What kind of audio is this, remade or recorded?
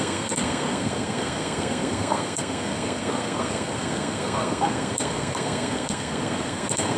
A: remade